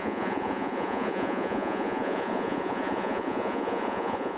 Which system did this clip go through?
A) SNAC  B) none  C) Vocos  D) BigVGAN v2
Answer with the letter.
C